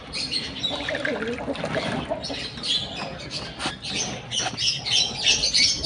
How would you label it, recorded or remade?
recorded